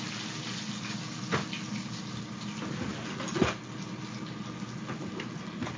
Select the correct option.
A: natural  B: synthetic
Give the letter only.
A